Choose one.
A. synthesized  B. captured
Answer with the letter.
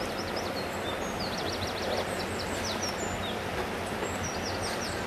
B